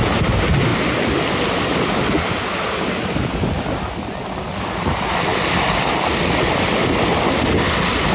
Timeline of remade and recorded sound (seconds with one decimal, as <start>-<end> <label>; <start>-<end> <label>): 0.0-8.1 recorded